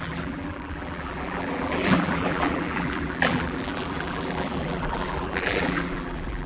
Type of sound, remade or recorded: remade